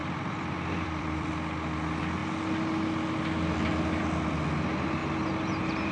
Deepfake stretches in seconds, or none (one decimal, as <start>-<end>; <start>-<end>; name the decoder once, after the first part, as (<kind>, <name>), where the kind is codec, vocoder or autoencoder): 0.0-1.3 (vocoder, BigVGAN v2)

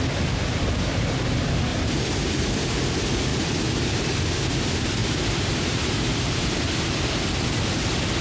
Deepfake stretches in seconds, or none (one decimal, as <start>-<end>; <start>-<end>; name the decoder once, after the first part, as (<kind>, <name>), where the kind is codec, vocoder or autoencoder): 1.7-2.4 (vocoder, BigVGAN v2); 3.3-4.6; 5.0-6.6